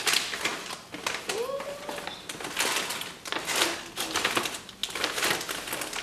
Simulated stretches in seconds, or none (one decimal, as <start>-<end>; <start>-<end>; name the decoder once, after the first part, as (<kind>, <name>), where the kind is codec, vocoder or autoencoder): none